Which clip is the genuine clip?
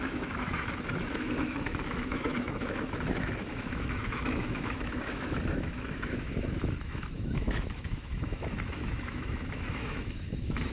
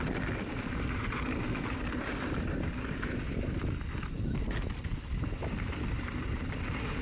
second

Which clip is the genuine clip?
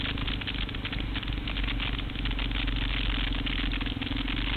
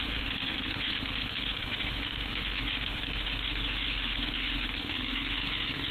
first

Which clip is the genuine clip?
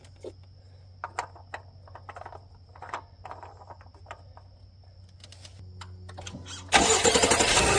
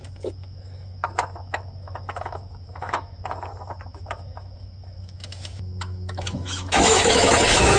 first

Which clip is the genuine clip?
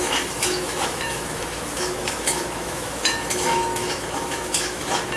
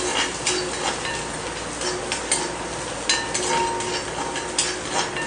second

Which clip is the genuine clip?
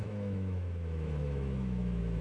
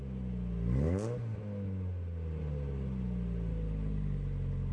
second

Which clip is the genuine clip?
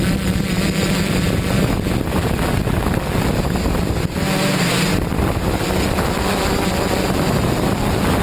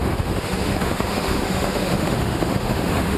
first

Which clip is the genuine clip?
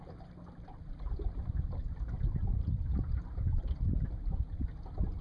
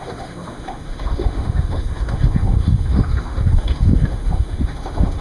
first